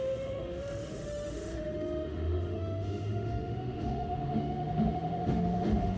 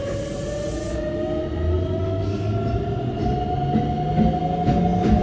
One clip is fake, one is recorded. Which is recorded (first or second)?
second